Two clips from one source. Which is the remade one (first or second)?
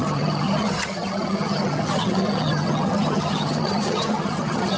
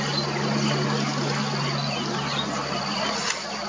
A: first